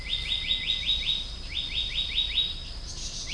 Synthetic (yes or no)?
no